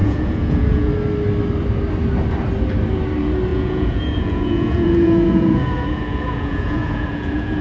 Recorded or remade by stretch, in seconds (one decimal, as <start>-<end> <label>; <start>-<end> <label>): 0.0-0.9 remade; 0.9-3.5 recorded; 3.5-7.6 remade